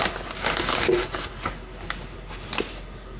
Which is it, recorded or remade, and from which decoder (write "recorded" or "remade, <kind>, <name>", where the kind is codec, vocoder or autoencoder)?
recorded